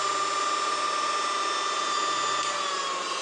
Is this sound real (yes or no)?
yes